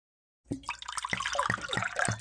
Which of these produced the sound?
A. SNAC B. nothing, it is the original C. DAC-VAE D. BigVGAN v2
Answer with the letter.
B